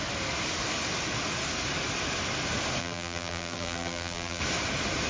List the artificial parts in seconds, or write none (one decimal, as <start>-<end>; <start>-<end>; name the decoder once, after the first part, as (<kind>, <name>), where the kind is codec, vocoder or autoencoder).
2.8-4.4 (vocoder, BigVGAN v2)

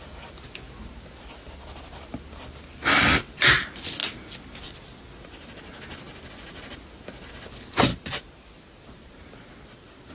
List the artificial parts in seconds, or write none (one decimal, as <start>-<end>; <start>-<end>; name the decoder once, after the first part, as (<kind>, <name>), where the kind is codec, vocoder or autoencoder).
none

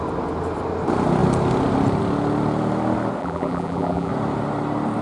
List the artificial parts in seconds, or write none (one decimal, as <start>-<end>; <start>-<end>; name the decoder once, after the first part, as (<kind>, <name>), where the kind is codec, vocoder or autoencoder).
3.2-4.1 (vocoder, BigVGAN v2)

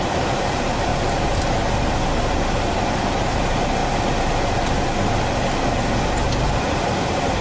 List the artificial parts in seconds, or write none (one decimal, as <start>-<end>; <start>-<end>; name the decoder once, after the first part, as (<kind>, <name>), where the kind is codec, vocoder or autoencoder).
0.0-0.9 (vocoder, BigVGAN v2); 2.7-3.8; 6.6-7.4

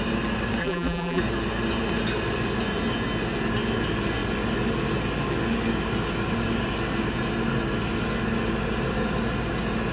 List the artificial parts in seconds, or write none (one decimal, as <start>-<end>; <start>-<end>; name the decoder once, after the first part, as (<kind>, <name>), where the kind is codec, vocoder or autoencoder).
0.6-1.2 (vocoder, BigVGAN v2)